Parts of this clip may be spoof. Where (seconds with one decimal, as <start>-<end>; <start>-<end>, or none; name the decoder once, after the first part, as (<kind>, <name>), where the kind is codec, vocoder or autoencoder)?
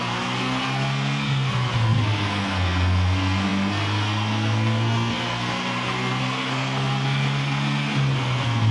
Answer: 0.0-8.7 (codec, SNAC)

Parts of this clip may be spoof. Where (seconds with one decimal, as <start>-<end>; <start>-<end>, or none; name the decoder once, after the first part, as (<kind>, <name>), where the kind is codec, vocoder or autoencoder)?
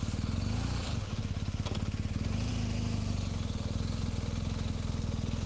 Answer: none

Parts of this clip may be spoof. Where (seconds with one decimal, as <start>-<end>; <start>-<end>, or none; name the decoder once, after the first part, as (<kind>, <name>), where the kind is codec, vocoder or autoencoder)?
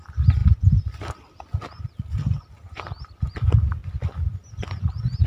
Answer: none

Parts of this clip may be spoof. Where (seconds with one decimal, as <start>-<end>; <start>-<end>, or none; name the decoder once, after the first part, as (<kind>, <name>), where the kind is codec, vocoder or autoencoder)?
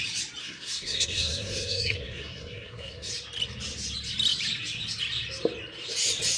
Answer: 0.4-3.1 (codec, SNAC)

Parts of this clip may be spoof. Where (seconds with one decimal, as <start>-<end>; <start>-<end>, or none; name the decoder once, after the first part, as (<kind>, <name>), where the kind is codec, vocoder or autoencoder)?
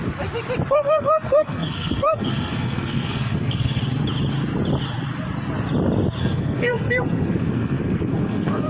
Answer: 0.7-3.8 (codec, SNAC); 6.2-8.7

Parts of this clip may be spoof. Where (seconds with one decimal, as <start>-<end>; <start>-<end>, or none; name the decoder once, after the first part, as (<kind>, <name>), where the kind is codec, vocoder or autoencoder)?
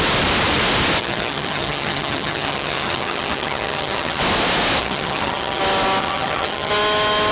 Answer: 1.0-4.2 (vocoder, HiFi-GAN); 4.8-5.6; 6.0-6.7